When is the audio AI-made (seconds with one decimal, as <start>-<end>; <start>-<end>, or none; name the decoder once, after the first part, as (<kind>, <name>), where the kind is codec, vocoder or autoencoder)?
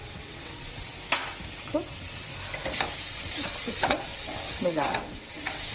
0.0-0.9 (vocoder, WaveNeXt); 1.6-2.3; 3.1-5.7